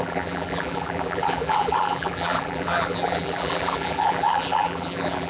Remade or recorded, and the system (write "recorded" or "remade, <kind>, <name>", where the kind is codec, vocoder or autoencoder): remade, vocoder, BigVGAN v2